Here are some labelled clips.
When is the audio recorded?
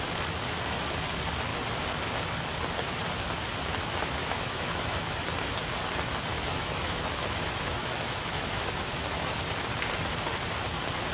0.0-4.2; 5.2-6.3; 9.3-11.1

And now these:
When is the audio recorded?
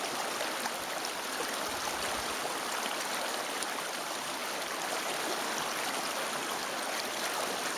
0.0-7.8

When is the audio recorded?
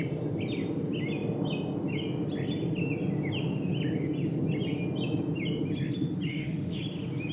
0.0-6.3; 6.8-7.3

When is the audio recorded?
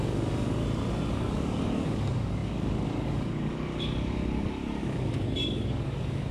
0.6-1.1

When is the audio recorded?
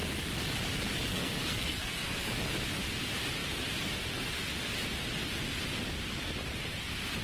0.0-1.1; 2.4-7.2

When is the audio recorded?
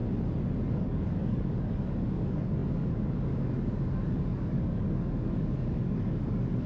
0.0-0.7